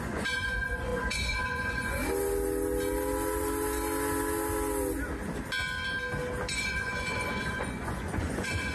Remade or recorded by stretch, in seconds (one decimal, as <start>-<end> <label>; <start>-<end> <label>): 0.0-2.0 remade; 2.0-6.5 recorded; 6.5-8.7 remade